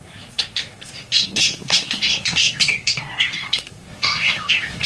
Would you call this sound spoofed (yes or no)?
yes